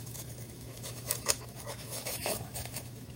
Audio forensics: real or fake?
fake